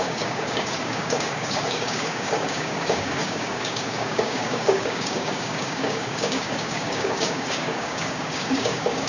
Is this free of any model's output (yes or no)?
no